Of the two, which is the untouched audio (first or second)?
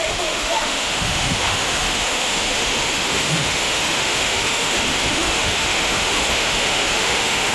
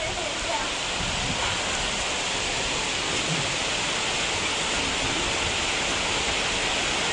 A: second